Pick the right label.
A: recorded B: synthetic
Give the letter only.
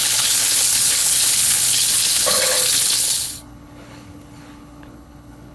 B